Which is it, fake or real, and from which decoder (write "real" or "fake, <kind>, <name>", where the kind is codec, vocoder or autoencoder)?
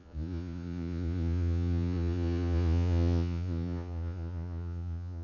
fake, vocoder, Vocos